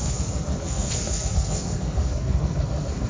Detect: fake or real fake